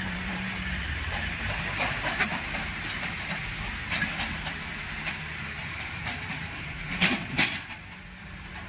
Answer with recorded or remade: remade